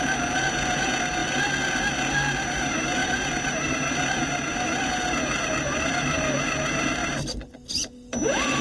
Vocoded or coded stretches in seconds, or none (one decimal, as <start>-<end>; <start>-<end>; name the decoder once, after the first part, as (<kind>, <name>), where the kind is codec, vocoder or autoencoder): none